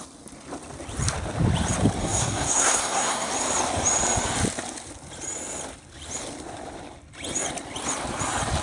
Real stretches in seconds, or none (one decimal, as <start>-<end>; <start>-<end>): 0.0-2.0; 3.3-8.6